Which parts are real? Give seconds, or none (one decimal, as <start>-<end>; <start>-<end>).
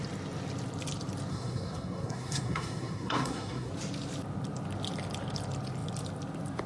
0.0-1.3; 3.7-6.7